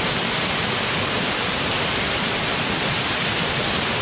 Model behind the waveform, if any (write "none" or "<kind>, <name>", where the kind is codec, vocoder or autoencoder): vocoder, BigVGAN v2